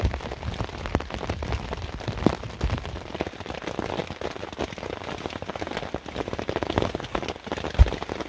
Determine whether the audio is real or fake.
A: real